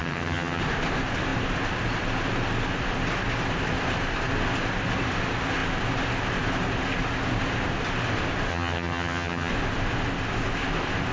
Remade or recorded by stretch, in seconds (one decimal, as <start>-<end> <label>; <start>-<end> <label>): 0.0-0.6 remade; 0.6-8.5 recorded; 8.5-9.5 remade; 9.5-11.1 recorded